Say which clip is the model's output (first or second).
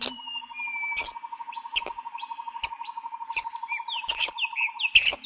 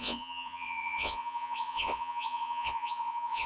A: second